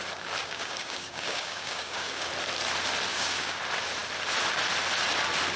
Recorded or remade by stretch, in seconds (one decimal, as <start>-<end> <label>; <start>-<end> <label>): 0.0-0.4 recorded; 0.4-2.3 remade; 2.3-3.1 recorded; 3.1-3.6 remade; 3.6-5.6 recorded